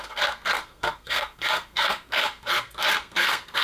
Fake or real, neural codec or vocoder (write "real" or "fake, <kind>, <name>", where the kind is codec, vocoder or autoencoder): fake, codec, SNAC